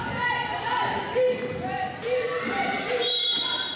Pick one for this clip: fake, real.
real